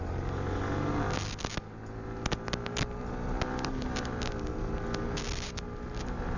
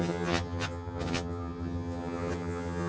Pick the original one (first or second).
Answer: first